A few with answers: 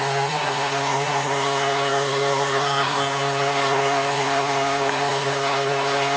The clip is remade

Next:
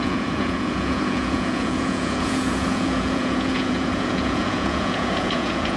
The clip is remade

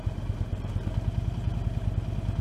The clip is recorded